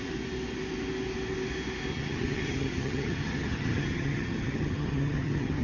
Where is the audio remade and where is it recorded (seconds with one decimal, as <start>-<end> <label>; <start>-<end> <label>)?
0.0-1.9 recorded; 1.9-5.6 remade